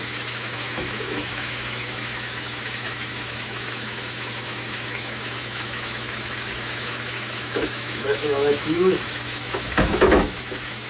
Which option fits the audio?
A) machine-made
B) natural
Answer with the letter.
A